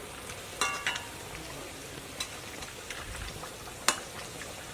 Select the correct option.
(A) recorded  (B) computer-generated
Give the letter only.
A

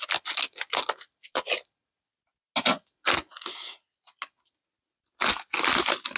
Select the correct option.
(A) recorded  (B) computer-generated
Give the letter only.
A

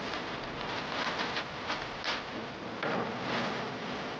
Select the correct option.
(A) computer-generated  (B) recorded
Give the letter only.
B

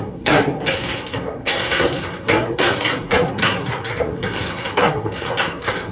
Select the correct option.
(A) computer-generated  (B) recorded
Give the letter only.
A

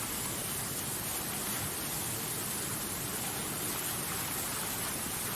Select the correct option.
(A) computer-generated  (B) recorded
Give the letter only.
B